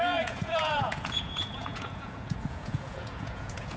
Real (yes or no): no